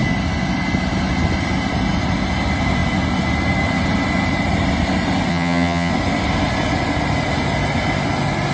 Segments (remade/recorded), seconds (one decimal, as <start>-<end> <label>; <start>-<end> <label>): 0.0-5.3 recorded; 5.3-5.9 remade; 5.9-8.5 recorded

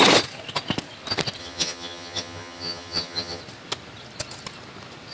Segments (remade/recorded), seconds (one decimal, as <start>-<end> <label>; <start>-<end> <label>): 0.0-1.4 recorded; 1.4-3.4 remade; 3.4-5.1 recorded

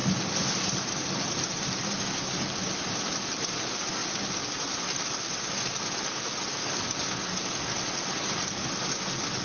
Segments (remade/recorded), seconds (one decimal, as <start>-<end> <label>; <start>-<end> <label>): 0.0-9.4 recorded

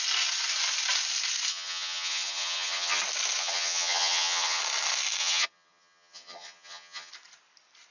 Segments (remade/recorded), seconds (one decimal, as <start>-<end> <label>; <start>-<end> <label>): 0.0-1.5 recorded; 1.5-3.0 remade; 3.0-3.4 recorded; 3.4-4.6 remade; 4.6-5.2 recorded; 5.2-7.1 remade; 7.1-7.9 recorded

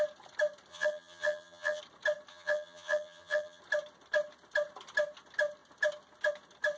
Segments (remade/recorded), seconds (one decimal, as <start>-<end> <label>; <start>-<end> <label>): 0.0-0.7 recorded; 0.7-1.8 remade; 1.8-2.3 recorded; 2.3-3.6 remade; 3.6-6.8 recorded